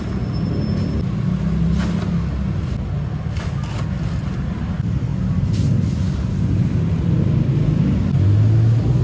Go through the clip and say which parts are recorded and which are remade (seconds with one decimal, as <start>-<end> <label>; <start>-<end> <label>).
0.0-9.0 recorded